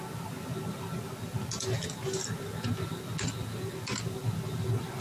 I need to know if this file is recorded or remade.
recorded